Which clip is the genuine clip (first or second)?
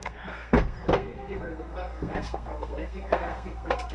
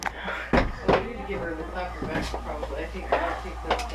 second